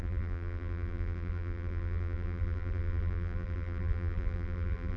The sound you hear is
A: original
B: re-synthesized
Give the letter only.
B